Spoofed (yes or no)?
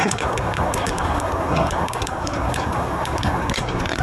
yes